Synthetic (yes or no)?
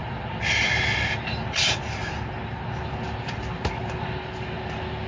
no